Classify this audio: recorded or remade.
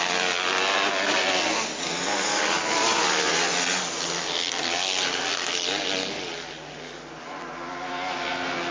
recorded